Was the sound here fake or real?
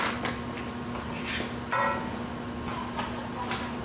real